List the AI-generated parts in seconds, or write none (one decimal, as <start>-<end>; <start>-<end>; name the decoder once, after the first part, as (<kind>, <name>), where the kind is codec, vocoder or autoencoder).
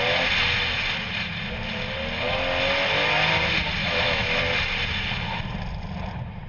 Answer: 3.8-4.4 (autoencoder, DAC-VAE)